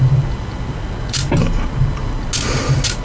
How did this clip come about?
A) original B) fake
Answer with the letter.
A